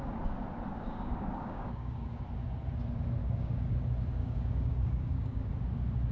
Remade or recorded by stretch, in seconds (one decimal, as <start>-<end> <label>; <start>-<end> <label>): 0.0-0.7 recorded; 0.7-2.2 remade; 2.2-3.2 recorded; 3.2-3.7 remade; 3.7-4.2 recorded; 4.2-5.5 remade; 5.5-6.1 recorded